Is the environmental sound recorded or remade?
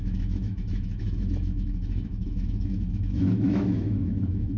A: remade